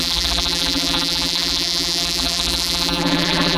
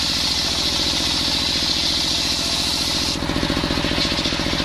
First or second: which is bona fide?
second